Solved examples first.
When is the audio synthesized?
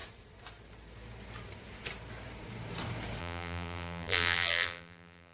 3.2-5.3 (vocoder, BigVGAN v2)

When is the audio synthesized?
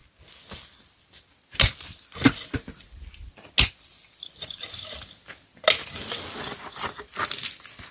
none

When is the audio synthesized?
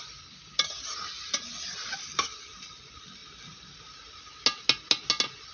none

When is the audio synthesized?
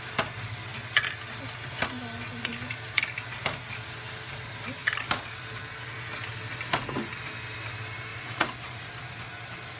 8.1-8.8 (vocoder, Vocos)